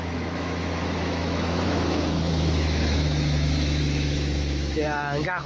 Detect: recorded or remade remade